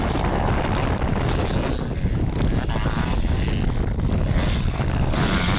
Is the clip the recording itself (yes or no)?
yes